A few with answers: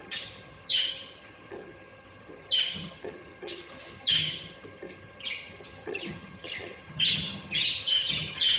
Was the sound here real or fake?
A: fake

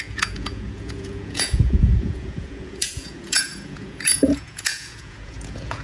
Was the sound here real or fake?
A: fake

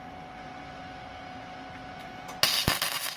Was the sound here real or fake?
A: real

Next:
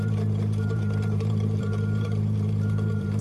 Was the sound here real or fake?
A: fake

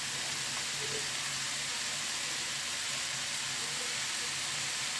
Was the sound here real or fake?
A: real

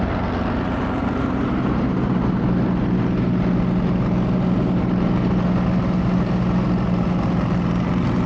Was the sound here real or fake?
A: real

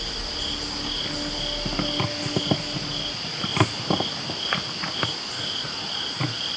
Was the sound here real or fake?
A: real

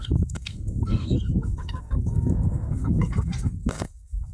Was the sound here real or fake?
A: fake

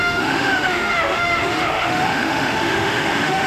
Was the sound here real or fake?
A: fake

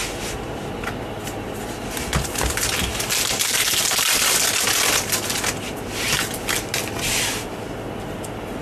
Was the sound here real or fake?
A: real